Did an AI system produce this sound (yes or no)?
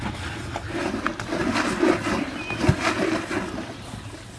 no